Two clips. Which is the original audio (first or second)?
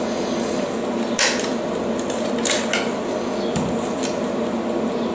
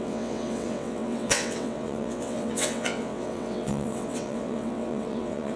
first